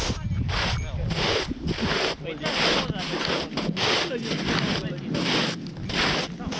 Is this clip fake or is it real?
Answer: real